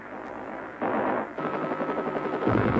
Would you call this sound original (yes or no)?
no